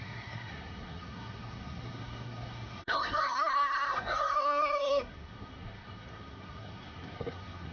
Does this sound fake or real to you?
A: fake